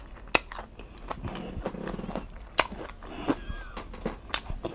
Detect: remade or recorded recorded